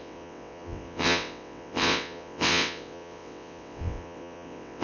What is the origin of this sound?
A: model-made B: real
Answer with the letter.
A